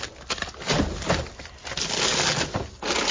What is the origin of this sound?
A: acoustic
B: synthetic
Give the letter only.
A